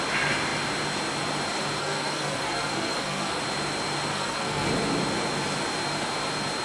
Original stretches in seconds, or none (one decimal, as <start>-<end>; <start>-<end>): 0.0-1.8; 3.4-4.1; 4.7-6.6